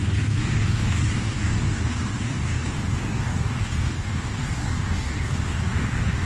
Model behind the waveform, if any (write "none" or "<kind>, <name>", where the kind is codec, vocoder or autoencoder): codec, DAC